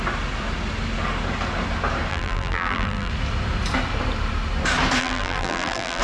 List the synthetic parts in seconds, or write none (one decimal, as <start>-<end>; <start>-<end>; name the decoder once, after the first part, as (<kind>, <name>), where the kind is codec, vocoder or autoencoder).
2.1-3.1 (vocoder, BigVGAN v2); 5.0-6.0